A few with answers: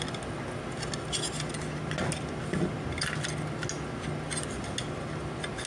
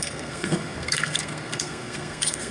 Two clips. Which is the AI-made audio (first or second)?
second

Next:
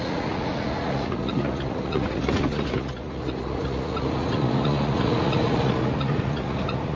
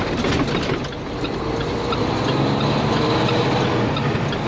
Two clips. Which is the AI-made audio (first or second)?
first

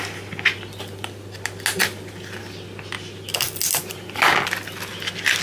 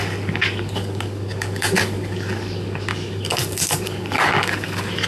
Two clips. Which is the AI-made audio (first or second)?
second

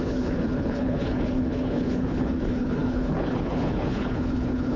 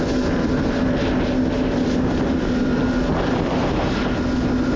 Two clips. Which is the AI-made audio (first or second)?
first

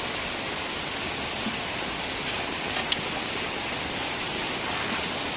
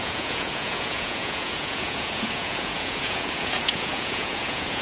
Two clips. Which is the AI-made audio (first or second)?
second